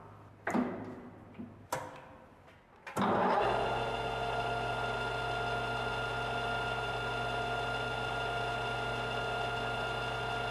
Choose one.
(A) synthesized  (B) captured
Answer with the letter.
B